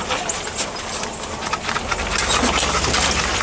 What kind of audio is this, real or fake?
real